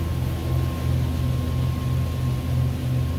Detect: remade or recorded recorded